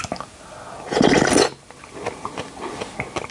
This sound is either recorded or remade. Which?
recorded